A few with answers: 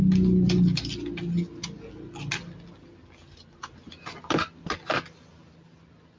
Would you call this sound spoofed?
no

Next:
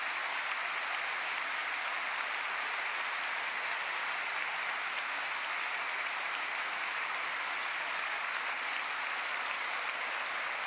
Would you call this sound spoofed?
no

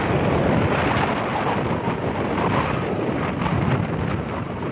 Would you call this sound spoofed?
no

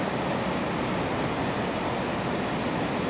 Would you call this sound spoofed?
no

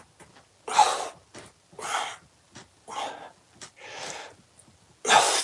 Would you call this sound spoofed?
no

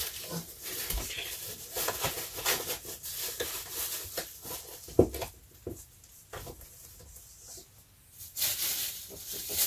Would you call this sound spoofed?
no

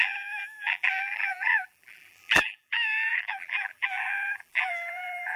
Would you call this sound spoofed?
yes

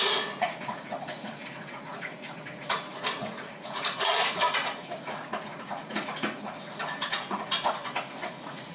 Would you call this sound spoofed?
yes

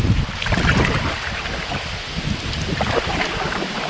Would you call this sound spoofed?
no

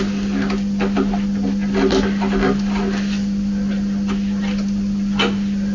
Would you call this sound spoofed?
no